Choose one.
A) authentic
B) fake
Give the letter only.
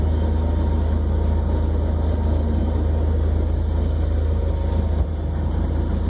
A